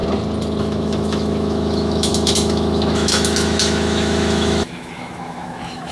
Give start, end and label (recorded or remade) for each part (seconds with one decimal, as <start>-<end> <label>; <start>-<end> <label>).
0.0-0.6 recorded; 0.6-5.9 remade